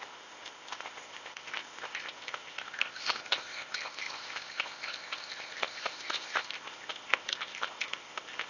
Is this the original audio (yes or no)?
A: no